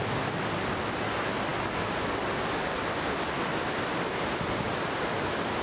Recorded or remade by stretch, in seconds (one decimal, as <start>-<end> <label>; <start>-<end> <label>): 0.0-5.6 recorded